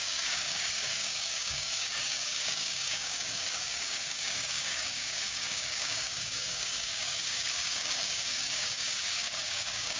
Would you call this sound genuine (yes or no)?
no